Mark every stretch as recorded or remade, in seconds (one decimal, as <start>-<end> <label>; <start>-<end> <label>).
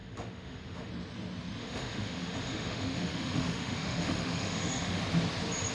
0.0-0.9 remade; 0.9-1.6 recorded; 1.6-5.0 remade; 5.0-5.7 recorded